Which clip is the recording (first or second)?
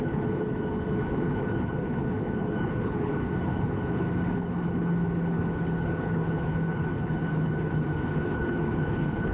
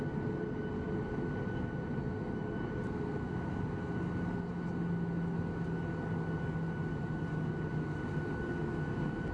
second